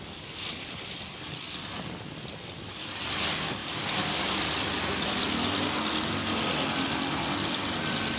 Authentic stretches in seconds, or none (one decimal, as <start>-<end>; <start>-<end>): 0.0-8.2